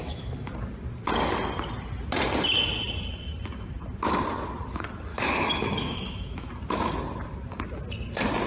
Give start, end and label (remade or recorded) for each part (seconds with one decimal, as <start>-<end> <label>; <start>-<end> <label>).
0.0-0.5 remade; 0.5-5.1 recorded; 5.1-6.5 remade; 6.5-8.5 recorded